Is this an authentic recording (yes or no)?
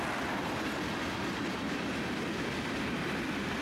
yes